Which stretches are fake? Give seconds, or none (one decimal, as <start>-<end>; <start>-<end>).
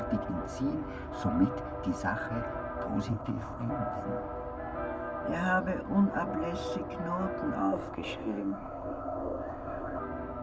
3.1-3.7; 7.6-10.0